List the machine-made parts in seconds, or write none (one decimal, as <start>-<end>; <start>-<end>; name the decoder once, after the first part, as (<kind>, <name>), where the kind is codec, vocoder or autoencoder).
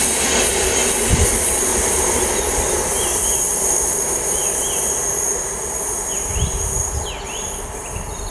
1.7-4.5 (vocoder, BigVGAN v2)